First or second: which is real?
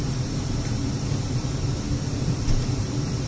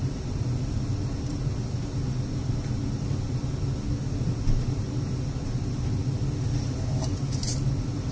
second